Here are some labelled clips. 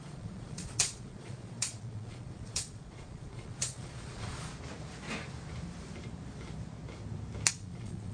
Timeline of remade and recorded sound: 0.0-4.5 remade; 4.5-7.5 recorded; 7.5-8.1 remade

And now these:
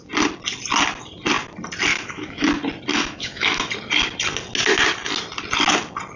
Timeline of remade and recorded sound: 0.0-1.9 recorded; 1.9-2.5 remade; 2.5-2.9 recorded; 2.9-3.7 remade; 3.7-6.2 recorded

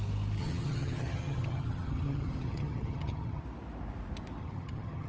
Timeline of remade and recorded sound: 0.0-0.4 recorded; 0.4-3.4 remade; 3.4-4.4 recorded; 4.4-5.1 remade